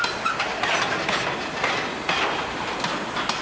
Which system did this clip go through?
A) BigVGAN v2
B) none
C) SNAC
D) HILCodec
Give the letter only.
B